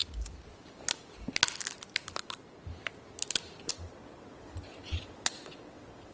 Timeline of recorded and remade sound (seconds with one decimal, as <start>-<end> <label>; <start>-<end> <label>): 0.0-3.7 recorded; 3.7-6.1 remade